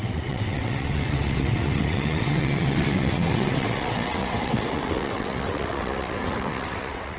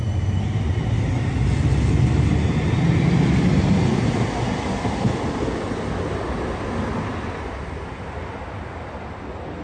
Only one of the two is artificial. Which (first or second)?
first